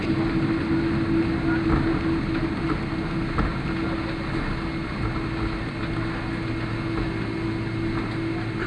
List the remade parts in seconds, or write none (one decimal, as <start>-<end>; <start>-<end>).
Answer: none